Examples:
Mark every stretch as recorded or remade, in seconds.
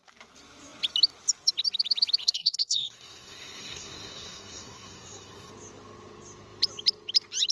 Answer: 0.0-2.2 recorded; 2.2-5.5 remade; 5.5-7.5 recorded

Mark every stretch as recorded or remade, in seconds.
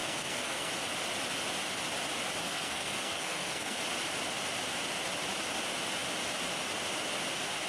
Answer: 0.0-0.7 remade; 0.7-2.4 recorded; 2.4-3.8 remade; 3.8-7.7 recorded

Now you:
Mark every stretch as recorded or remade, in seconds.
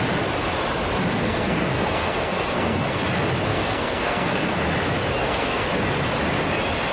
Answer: 0.0-1.1 recorded; 1.1-3.0 remade; 3.0-3.5 recorded; 3.5-4.6 remade; 4.6-5.2 recorded; 5.2-5.7 remade; 5.7-6.9 recorded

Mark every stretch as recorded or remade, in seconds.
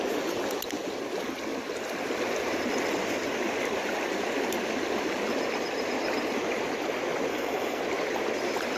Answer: 0.0-7.3 recorded; 7.3-7.8 remade; 7.8-8.8 recorded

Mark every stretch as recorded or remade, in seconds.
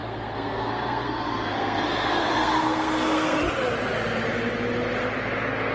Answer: 0.0-3.4 remade; 3.4-5.7 recorded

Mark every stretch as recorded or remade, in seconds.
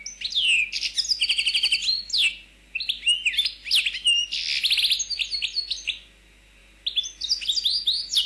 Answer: 0.0-8.3 recorded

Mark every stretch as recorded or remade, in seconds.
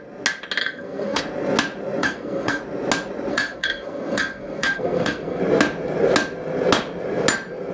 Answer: 0.0-0.6 recorded; 0.6-1.2 remade; 1.2-2.0 recorded; 2.0-2.6 remade; 2.6-3.3 recorded; 3.3-5.4 remade; 5.4-7.7 recorded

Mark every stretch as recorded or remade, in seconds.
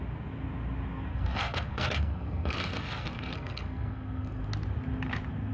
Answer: 0.0-1.1 recorded; 1.1-4.4 remade; 4.4-5.5 recorded